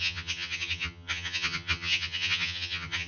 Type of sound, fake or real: fake